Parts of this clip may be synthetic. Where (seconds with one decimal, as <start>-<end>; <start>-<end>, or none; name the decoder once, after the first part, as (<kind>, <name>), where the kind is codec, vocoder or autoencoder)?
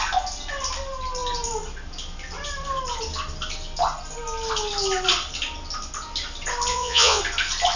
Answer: 6.7-7.2 (vocoder, Vocos)